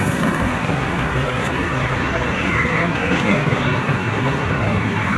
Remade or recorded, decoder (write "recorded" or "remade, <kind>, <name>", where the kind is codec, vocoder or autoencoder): remade, codec, SNAC